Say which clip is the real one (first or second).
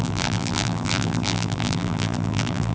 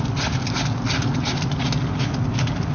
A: second